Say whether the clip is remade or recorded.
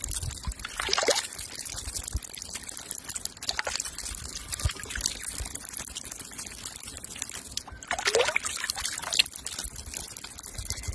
recorded